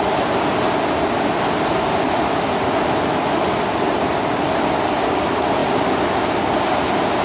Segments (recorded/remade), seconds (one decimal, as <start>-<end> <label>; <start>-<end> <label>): 0.0-7.2 recorded